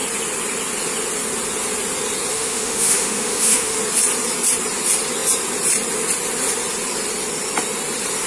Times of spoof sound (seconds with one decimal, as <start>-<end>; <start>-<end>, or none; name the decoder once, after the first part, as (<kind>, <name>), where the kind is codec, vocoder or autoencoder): 2.3-3.8 (autoencoder, DAC-VAE)